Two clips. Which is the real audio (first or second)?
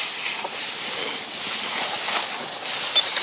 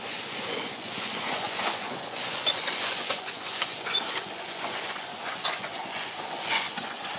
first